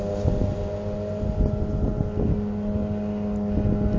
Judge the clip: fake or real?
real